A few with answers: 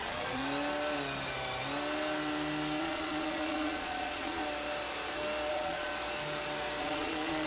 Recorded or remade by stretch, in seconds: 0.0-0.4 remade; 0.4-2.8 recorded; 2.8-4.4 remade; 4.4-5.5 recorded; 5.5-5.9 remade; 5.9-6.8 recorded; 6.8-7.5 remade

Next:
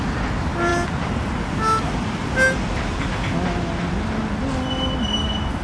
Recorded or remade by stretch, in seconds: 0.0-5.6 recorded

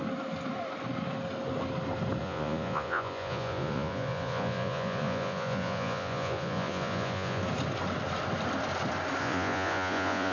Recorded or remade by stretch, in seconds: 0.0-2.2 recorded; 2.2-7.4 remade; 7.4-9.2 recorded; 9.2-10.3 remade

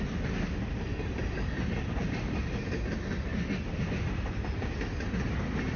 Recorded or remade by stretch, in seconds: 0.0-5.8 recorded